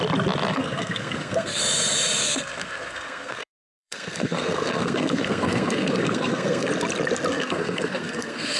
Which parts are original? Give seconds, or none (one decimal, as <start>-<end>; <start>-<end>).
0.0-0.5; 1.6-2.2; 6.7-7.3